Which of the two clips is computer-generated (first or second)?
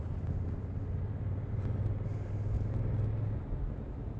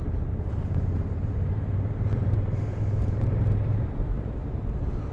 second